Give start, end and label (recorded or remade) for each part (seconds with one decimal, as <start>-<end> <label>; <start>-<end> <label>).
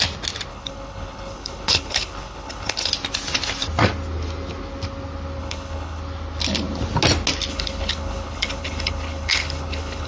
0.0-0.5 recorded; 0.5-2.9 remade; 2.9-5.4 recorded; 5.4-6.0 remade; 6.0-7.5 recorded; 7.5-10.1 remade